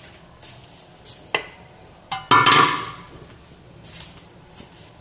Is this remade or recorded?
recorded